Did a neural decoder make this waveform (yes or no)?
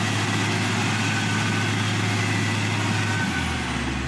no